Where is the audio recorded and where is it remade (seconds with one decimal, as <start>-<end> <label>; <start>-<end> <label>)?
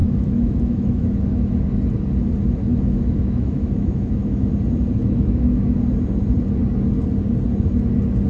0.0-1.8 remade; 1.8-2.7 recorded; 2.7-4.5 remade; 4.5-5.0 recorded; 5.0-5.8 remade; 5.8-8.3 recorded